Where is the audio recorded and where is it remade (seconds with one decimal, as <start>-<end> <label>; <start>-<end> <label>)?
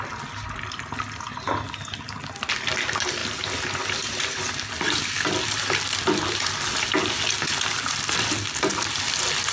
0.0-9.5 recorded